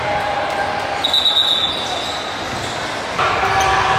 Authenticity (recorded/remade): recorded